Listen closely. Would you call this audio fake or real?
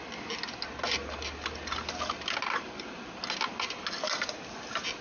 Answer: real